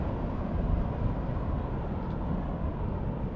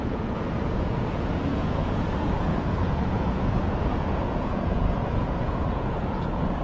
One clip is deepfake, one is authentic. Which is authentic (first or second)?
first